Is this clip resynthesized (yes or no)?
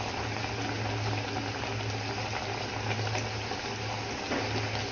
no